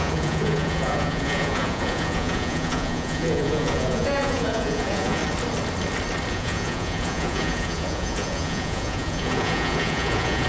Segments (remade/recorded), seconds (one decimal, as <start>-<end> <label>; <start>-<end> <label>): 0.0-5.2 remade; 5.2-6.3 recorded; 6.3-10.5 remade